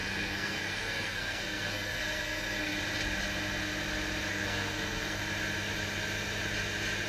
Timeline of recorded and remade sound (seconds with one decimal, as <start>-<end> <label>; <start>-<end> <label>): 0.0-2.8 remade; 2.8-4.3 recorded; 4.3-5.2 remade; 5.2-7.1 recorded